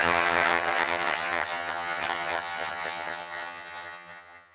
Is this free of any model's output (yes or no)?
no